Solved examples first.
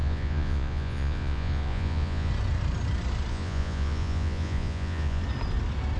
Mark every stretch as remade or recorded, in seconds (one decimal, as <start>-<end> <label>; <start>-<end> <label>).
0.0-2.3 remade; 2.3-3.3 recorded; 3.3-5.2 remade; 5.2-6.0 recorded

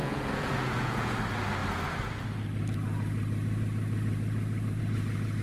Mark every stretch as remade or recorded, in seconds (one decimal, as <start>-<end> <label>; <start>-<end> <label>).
0.0-1.1 remade; 1.1-5.4 recorded

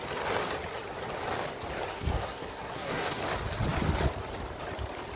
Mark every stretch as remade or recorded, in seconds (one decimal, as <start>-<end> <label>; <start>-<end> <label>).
0.0-1.9 recorded; 1.9-3.2 remade; 3.2-5.2 recorded

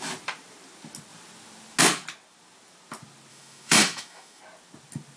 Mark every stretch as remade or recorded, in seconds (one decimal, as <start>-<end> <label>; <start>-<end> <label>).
0.0-3.3 recorded; 3.3-4.4 remade; 4.4-5.2 recorded

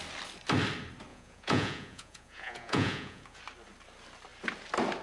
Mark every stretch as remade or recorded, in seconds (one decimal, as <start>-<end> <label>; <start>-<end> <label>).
0.0-1.1 recorded; 1.1-3.4 remade; 3.4-5.0 recorded

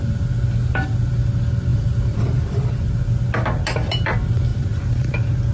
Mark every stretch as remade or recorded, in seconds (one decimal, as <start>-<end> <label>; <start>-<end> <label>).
0.0-1.7 recorded; 1.7-2.7 remade; 2.7-4.5 recorded; 4.5-5.1 remade; 5.1-5.5 recorded